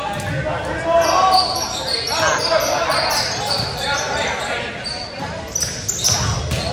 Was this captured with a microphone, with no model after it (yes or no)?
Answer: yes